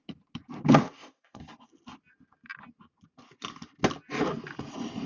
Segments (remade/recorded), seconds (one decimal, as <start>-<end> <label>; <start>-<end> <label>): 0.0-0.8 recorded; 0.8-1.4 remade; 1.4-5.1 recorded